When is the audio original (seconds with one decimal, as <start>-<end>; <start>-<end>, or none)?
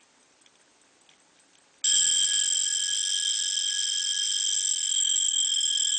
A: 0.0-6.0